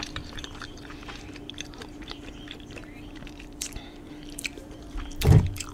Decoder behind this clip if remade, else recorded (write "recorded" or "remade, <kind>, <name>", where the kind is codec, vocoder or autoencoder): remade, vocoder, BigVGAN v2